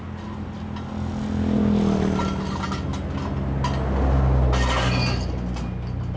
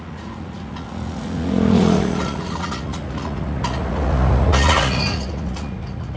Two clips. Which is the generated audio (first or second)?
second